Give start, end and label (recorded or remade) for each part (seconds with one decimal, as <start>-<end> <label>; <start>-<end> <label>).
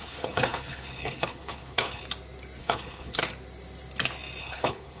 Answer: 0.0-2.0 remade; 2.0-2.6 recorded; 2.6-3.2 remade; 3.2-4.4 recorded; 4.4-5.0 remade